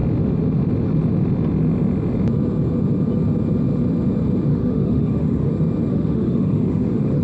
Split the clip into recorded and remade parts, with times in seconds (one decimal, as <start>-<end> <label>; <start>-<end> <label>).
0.0-4.5 recorded; 4.5-5.5 remade; 5.5-5.9 recorded; 5.9-7.2 remade